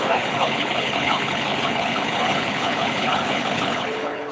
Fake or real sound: fake